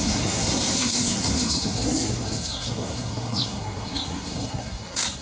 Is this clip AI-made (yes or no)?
yes